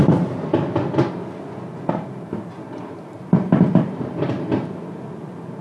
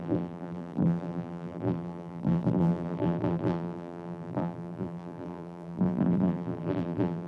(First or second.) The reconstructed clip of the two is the second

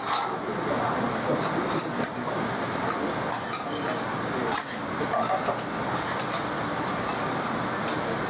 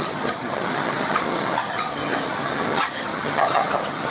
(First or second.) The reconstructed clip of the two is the second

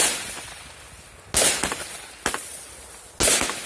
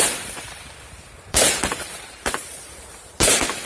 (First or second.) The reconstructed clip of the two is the second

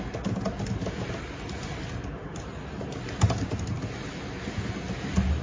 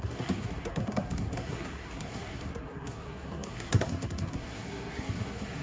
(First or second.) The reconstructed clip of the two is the second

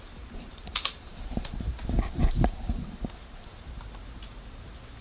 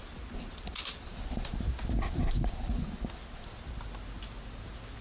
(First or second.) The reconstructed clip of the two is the first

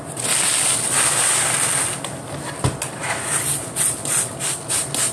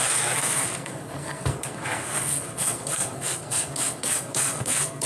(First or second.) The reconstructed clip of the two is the second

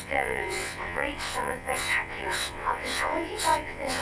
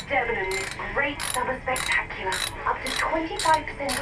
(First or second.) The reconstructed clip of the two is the first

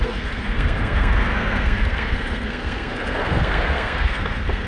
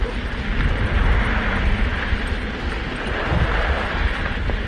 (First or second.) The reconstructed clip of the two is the first